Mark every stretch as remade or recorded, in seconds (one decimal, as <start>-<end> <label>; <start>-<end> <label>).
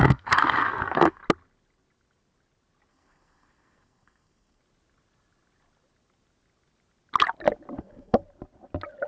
0.0-1.2 remade; 1.2-2.9 recorded; 2.9-4.6 remade; 4.6-7.8 recorded; 7.8-8.2 remade; 8.2-9.1 recorded